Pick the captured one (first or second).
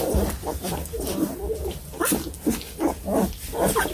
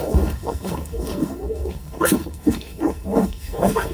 first